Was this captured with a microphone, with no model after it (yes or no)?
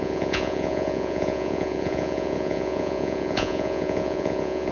no